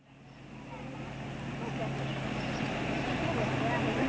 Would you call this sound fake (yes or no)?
no